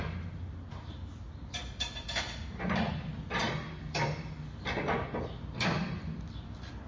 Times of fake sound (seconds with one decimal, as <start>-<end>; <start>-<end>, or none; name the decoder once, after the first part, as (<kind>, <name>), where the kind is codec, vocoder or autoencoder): none